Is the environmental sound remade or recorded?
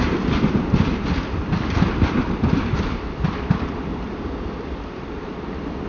remade